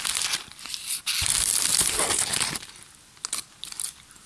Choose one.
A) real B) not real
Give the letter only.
A